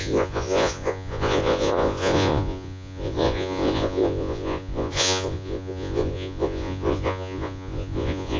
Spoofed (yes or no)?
yes